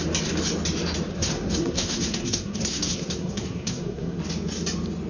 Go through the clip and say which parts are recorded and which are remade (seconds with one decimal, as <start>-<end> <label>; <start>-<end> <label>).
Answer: 0.0-1.1 recorded; 1.1-4.2 remade; 4.2-5.1 recorded